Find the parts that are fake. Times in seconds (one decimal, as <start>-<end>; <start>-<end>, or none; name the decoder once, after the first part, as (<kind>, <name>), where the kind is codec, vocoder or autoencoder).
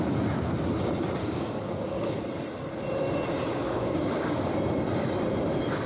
1.2-2.2 (codec, DAC); 3.5-4.5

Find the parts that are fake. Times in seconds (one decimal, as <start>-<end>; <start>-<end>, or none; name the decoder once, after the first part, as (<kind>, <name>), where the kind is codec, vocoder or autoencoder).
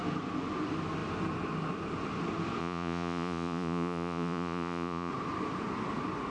2.6-5.1 (vocoder, Vocos)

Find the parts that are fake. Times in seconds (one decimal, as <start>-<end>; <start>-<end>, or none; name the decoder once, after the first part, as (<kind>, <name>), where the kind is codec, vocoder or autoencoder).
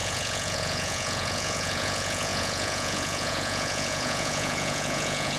0.0-5.4 (vocoder, Vocos)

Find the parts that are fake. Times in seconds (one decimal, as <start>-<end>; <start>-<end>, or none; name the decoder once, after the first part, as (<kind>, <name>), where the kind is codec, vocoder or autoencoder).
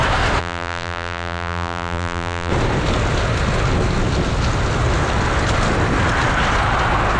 0.4-2.5 (vocoder, BigVGAN v2)